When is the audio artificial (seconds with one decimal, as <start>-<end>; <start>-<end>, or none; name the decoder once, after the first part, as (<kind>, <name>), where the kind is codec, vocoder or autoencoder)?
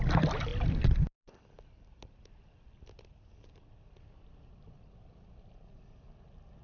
none